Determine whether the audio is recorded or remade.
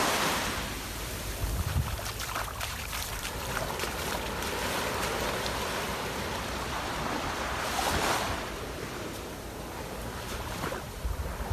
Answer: remade